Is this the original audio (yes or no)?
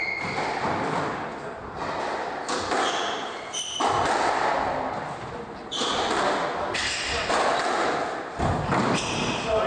yes